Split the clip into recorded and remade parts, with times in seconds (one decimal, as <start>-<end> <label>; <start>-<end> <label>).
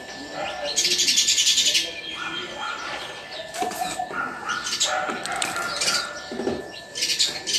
0.0-7.6 recorded